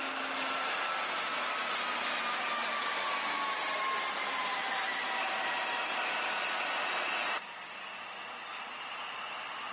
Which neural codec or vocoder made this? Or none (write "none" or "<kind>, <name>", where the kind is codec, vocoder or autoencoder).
none